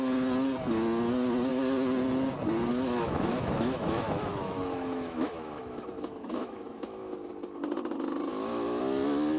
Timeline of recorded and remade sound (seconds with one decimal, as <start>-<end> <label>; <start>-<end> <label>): 0.0-2.7 recorded; 2.7-7.3 remade; 7.3-8.3 recorded; 8.3-8.8 remade; 8.8-9.4 recorded